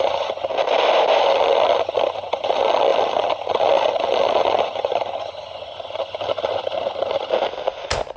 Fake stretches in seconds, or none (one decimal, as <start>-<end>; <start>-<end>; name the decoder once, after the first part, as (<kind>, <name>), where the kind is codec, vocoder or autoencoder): 0.0-0.5 (vocoder, HiFi-GAN); 1.2-7.3